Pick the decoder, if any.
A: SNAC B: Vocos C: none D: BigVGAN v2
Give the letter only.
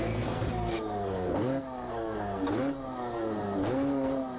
A